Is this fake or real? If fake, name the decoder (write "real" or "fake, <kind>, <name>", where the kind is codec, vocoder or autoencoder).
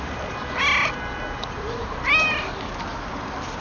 real